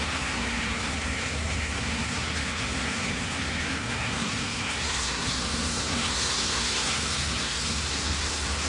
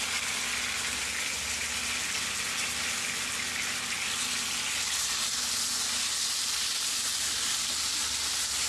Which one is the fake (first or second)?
first